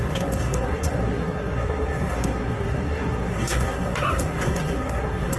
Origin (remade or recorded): remade